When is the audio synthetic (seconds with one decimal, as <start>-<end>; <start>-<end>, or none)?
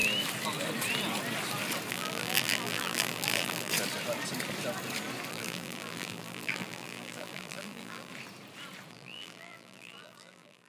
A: 1.9-3.7; 5.3-8.1; 8.9-10.7